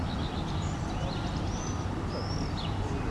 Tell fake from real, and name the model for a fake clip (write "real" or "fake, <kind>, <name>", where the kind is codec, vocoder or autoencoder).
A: real